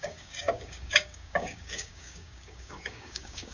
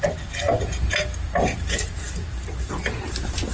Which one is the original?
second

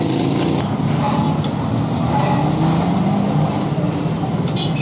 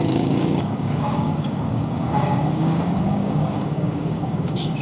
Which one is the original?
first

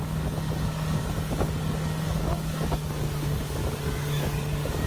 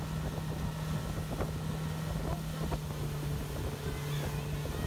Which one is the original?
second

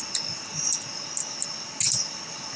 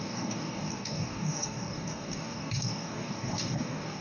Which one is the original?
first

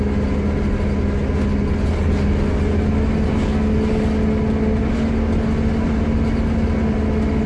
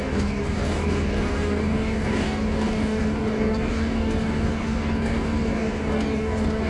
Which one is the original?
first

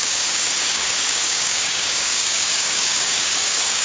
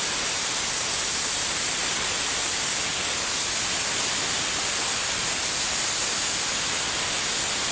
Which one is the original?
second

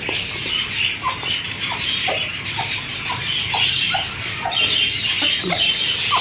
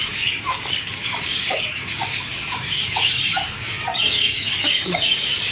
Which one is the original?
first